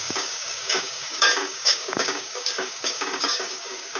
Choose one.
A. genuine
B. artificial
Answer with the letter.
B